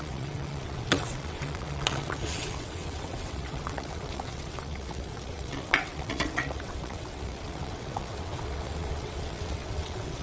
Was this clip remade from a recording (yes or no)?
yes